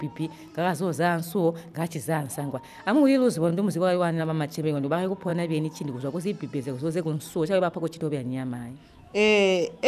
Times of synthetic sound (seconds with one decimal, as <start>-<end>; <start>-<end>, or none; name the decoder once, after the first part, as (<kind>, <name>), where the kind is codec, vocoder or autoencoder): 3.5-4.2 (autoencoder, DAC-VAE); 8.8-9.9